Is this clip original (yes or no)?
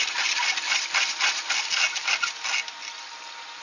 yes